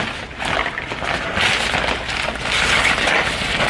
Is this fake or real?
real